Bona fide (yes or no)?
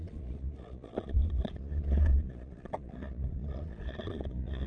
no